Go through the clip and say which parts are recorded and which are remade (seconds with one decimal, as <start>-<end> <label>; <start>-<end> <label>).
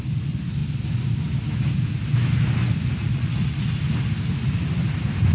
0.0-3.0 recorded; 3.0-3.8 remade; 3.8-5.3 recorded